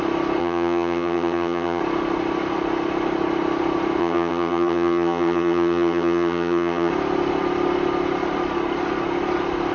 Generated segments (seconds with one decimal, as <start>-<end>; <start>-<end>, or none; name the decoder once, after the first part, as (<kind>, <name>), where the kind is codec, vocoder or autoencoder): 0.4-1.8 (vocoder, HiFi-GAN); 4.0-6.9